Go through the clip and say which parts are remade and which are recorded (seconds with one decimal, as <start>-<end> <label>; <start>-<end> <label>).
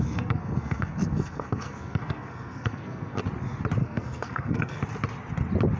0.0-3.2 remade; 3.2-3.8 recorded; 3.8-4.8 remade; 4.8-5.8 recorded